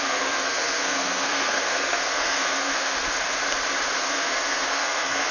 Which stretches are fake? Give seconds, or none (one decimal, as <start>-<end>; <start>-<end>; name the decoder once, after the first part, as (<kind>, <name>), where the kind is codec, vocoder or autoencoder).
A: 0.0-3.0 (codec, SNAC); 4.0-5.3